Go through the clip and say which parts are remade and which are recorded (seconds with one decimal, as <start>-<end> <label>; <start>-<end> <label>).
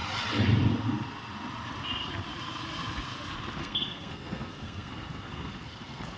0.0-3.6 recorded; 3.6-6.2 remade